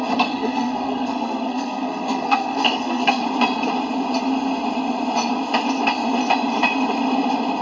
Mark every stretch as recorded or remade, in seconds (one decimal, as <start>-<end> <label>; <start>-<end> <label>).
0.0-3.2 remade; 3.2-7.6 recorded